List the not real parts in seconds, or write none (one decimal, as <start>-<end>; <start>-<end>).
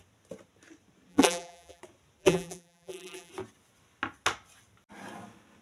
1.1-1.8; 2.2-3.3